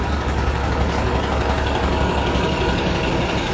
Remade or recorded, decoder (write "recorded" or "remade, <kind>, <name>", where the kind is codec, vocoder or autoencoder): remade, codec, DAC